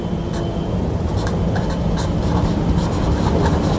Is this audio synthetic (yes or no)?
no